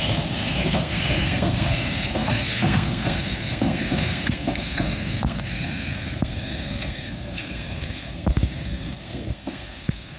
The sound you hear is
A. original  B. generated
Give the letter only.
B